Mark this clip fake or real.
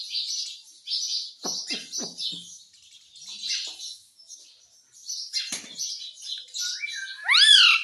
real